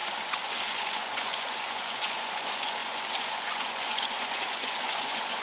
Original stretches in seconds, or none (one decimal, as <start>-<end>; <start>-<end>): none